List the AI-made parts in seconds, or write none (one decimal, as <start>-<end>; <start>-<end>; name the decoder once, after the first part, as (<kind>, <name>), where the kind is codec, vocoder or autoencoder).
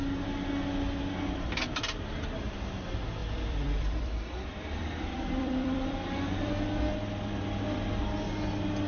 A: 3.2-6.5 (vocoder, BigVGAN v2)